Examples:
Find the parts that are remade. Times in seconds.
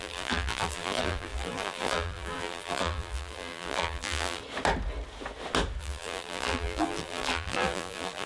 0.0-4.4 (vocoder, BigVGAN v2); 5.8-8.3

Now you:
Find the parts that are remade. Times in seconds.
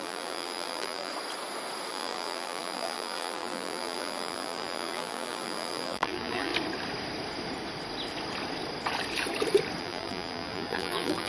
0.0-1.1 (vocoder, BigVGAN v2); 1.9-6.5; 9.8-11.3